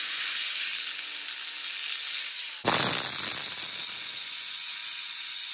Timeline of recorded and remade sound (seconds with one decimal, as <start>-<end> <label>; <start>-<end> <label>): 0.0-0.7 remade; 0.7-4.0 recorded; 4.0-5.5 remade